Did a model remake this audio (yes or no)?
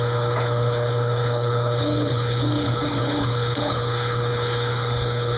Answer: yes